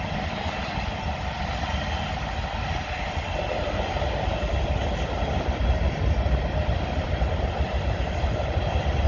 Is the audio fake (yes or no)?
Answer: no